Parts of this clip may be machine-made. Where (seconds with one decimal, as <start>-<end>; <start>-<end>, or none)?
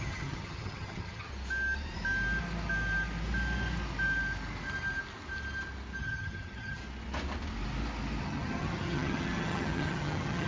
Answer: 0.0-1.3; 6.0-6.8; 8.2-10.5